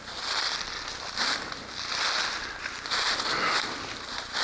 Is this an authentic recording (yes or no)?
yes